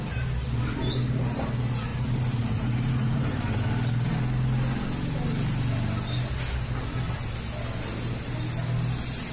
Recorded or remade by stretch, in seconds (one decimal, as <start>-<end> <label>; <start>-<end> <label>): 0.0-1.9 recorded; 1.9-3.5 remade; 3.5-9.3 recorded